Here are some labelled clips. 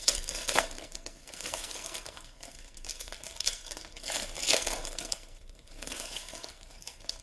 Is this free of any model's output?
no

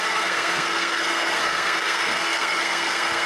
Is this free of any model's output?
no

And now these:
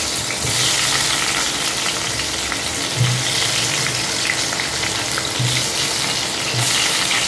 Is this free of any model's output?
yes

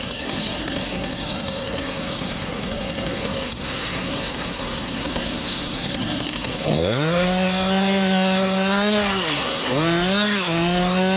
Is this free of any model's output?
no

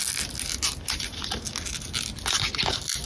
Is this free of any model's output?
yes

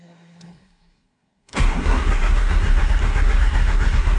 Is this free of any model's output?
no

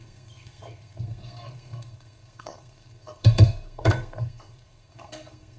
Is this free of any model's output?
no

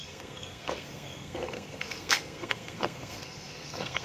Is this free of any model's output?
no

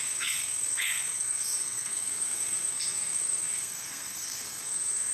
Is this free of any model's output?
no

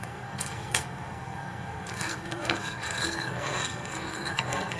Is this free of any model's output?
no